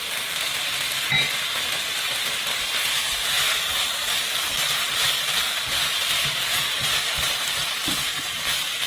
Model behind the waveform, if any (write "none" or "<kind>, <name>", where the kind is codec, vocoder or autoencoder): none